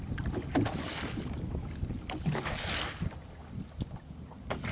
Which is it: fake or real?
real